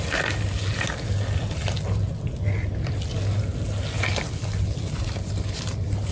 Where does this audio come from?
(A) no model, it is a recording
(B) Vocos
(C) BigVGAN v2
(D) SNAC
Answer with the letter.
A